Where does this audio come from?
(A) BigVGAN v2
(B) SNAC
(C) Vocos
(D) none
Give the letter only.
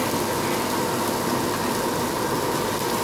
D